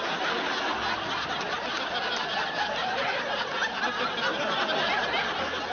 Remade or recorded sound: recorded